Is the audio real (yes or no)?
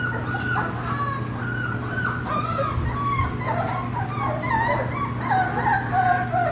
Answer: yes